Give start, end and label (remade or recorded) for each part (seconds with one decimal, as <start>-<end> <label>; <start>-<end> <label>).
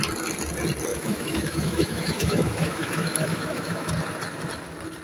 0.0-0.9 recorded; 0.9-3.9 remade; 3.9-5.0 recorded